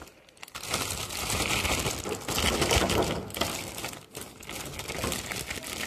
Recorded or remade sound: recorded